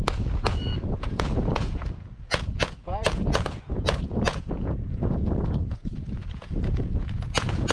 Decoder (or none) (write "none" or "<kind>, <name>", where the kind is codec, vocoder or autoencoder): vocoder, Vocos